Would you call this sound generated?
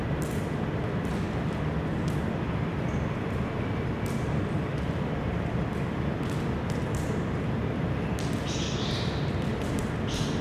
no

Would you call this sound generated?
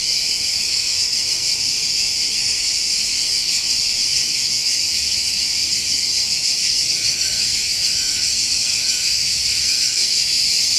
yes